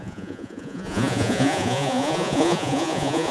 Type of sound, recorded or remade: remade